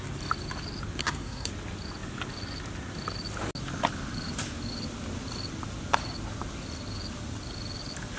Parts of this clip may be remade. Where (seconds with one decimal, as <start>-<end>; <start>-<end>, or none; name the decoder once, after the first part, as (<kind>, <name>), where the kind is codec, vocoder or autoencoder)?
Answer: 1.0-1.5 (codec, SNAC)